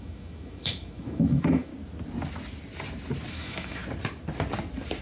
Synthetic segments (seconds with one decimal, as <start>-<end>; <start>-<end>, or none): 0.0-1.7; 3.3-3.8